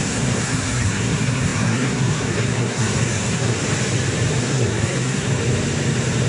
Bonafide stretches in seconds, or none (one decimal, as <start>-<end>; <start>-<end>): 3.6-4.4; 5.3-6.3